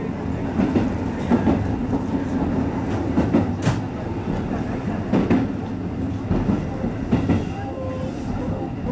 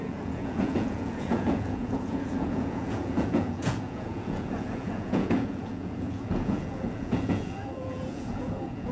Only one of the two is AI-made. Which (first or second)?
second